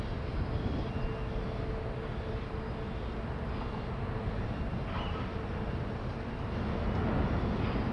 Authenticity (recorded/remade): recorded